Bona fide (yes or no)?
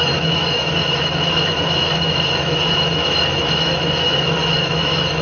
no